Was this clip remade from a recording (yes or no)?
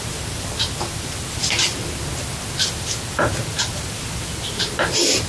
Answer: no